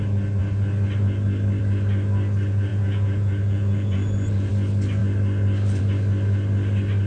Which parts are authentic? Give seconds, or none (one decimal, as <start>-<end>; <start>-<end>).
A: 0.0-2.7; 4.5-7.1